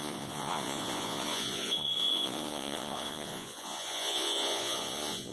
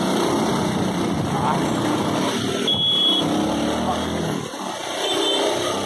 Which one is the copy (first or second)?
first